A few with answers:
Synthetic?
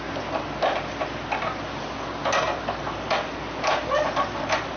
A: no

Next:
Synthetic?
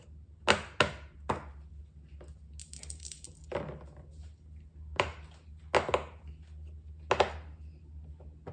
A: no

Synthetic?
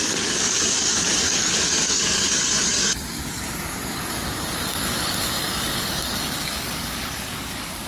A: yes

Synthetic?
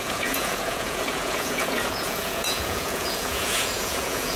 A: yes